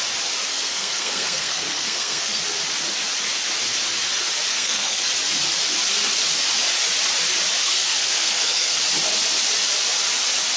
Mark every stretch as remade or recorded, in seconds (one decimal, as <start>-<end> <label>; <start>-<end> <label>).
0.0-0.5 recorded; 0.5-2.4 remade; 2.4-4.5 recorded; 4.5-5.1 remade; 5.1-7.6 recorded; 7.6-8.8 remade; 8.8-10.6 recorded